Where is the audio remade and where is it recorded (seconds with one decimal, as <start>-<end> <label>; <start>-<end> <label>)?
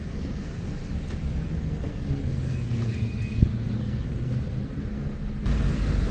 0.0-0.8 remade; 0.8-1.4 recorded; 1.4-6.1 remade